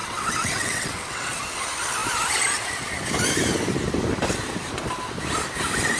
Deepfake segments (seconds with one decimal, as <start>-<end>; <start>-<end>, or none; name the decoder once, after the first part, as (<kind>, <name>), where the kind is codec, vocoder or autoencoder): 0.0-1.4 (vocoder, WaveNeXt)